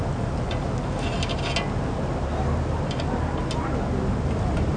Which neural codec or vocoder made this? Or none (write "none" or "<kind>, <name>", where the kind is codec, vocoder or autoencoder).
none